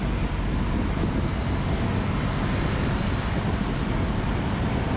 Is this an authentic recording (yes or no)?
yes